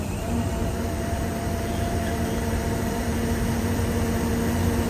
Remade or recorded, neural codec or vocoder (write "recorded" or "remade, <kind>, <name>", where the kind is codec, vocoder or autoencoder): remade, vocoder, BigVGAN v2